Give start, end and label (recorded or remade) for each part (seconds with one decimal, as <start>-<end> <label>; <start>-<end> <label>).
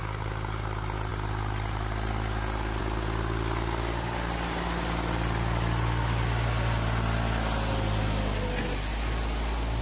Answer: 0.0-9.8 recorded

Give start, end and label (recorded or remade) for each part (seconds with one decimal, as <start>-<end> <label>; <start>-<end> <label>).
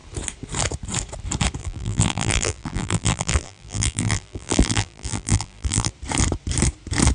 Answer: 0.0-1.6 recorded; 1.6-5.9 remade; 5.9-7.1 recorded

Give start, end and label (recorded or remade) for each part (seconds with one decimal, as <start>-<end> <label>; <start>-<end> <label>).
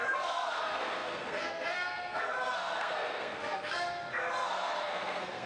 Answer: 0.0-5.5 remade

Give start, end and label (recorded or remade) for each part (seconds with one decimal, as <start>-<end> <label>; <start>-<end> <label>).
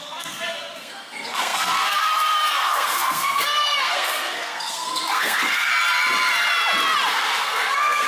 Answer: 0.0-5.7 remade; 5.7-7.1 recorded; 7.1-8.1 remade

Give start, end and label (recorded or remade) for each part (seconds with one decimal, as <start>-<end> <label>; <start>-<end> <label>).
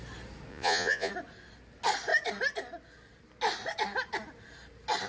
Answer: 0.0-0.5 recorded; 0.5-1.1 remade; 1.1-5.1 recorded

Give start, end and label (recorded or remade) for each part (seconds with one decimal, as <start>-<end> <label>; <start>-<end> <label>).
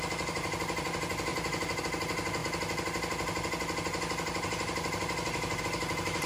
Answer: 0.0-6.3 recorded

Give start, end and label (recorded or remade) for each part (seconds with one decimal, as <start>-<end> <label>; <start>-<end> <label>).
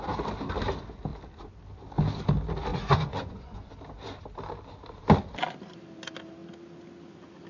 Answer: 0.0-2.7 recorded; 2.7-3.7 remade; 3.7-7.5 recorded